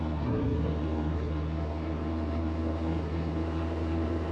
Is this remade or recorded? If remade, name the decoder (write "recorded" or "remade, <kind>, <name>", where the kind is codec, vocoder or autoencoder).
remade, codec, SNAC